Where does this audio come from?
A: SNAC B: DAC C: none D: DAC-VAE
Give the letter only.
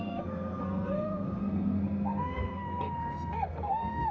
A